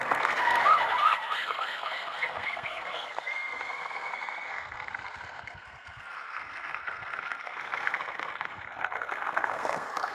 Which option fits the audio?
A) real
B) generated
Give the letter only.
B